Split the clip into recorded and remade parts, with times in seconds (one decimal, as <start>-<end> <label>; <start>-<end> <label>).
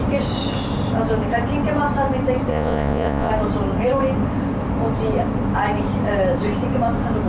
0.0-2.5 recorded; 2.5-3.3 remade; 3.3-7.3 recorded